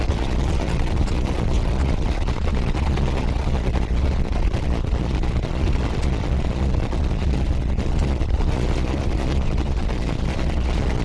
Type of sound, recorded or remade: remade